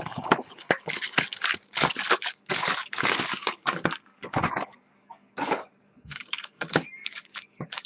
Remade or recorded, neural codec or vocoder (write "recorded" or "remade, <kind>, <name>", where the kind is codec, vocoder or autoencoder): remade, codec, DAC